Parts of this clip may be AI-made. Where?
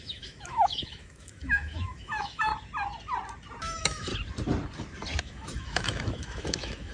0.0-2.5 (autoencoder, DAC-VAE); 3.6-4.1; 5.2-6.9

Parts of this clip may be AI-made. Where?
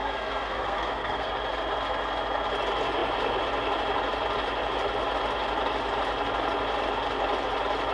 0.0-1.3 (codec, SNAC)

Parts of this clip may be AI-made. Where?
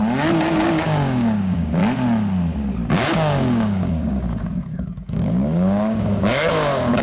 0.6-1.8 (codec, DAC); 2.9-7.0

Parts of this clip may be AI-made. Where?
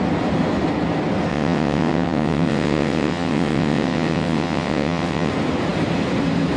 1.3-5.3 (vocoder, WaveNeXt)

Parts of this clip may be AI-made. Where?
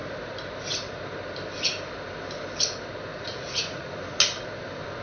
3.1-3.9 (vocoder, Vocos)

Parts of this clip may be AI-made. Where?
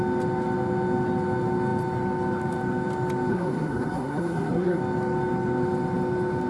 3.3-4.8 (codec, SNAC)